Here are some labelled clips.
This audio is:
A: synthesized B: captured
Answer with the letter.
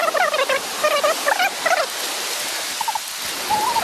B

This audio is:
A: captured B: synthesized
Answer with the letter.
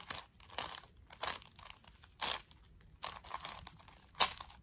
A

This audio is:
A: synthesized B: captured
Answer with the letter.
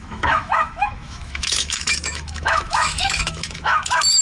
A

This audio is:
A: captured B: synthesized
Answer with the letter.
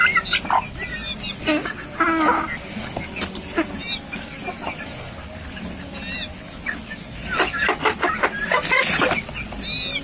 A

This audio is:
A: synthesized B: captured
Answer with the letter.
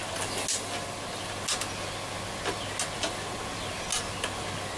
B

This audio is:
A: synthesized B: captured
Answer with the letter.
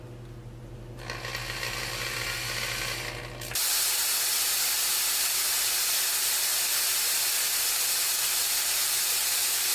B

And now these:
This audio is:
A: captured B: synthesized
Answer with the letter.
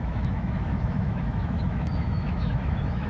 B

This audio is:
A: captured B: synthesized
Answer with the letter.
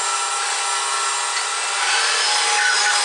A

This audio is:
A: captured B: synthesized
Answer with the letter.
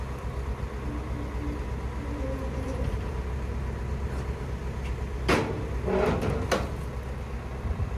A